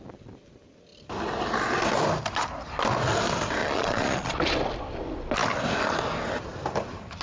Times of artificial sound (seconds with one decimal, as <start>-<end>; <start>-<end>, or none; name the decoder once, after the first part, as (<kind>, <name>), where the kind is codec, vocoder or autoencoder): 3.6-4.4 (vocoder, Vocos)